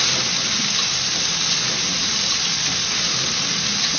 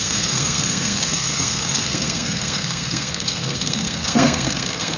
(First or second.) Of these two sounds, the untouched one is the first